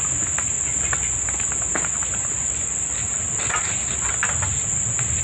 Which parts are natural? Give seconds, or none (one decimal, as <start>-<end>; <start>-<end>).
0.0-5.2

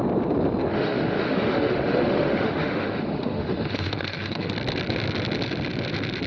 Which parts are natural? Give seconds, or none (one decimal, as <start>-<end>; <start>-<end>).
0.0-0.7; 4.5-6.3

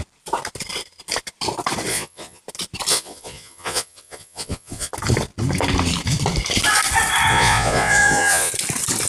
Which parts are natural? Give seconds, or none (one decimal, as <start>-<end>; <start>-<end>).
0.0-1.9; 2.4-2.9; 4.9-7.3; 8.5-9.1

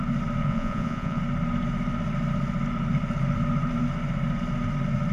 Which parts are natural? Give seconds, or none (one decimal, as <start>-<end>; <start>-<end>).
0.0-0.4; 1.2-5.1

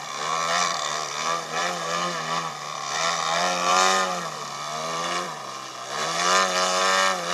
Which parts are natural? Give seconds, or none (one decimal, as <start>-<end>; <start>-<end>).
none

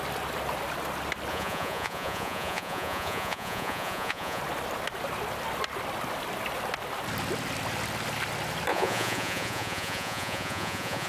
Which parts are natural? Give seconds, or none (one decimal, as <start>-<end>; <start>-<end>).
0.0-1.3; 4.4-8.7